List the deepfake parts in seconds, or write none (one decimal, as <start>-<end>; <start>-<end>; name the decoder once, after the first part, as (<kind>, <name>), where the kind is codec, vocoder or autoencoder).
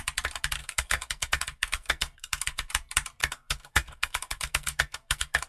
0.6-2.7 (codec, SNAC); 3.2-5.5